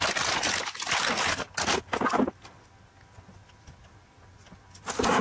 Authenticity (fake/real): real